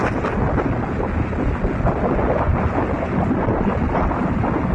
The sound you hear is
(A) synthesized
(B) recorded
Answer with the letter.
B